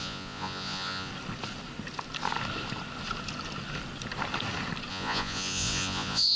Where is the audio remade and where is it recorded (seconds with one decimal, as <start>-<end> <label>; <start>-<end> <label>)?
0.0-1.1 remade; 1.1-4.9 recorded; 4.9-6.4 remade